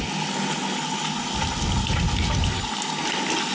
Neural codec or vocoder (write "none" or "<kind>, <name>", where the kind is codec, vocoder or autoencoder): none